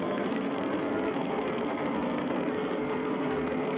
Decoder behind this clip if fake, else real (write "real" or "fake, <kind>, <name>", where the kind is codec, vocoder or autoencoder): fake, codec, SNAC